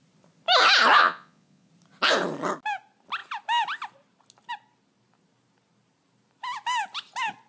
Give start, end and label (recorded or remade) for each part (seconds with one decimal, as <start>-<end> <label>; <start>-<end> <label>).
0.0-1.0 recorded; 1.0-1.7 remade; 1.7-7.5 recorded